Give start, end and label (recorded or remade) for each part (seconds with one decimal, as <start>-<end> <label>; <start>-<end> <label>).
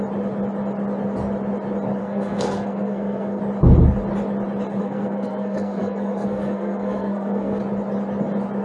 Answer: 0.0-2.0 recorded; 2.0-3.4 remade; 3.4-4.8 recorded; 4.8-7.6 remade; 7.6-8.6 recorded